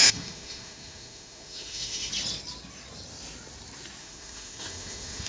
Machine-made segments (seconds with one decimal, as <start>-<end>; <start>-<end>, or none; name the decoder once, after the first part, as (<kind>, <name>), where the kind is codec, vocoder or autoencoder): 0.0-2.1 (autoencoder, DAC-VAE); 4.0-5.3